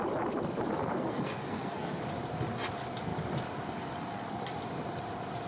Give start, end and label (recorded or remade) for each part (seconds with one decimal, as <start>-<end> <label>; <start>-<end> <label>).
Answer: 0.0-0.8 recorded; 0.8-2.0 remade; 2.0-5.5 recorded